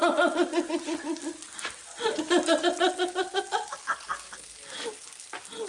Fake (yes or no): no